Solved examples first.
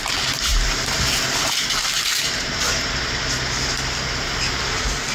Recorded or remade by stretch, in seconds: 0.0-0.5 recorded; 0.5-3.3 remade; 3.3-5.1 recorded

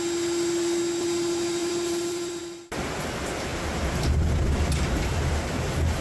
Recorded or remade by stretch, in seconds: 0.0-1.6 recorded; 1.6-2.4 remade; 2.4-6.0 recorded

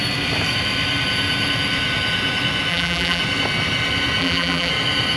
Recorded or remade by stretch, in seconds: 0.0-2.7 recorded; 2.7-3.2 remade; 3.2-4.2 recorded; 4.2-4.7 remade; 4.7-5.2 recorded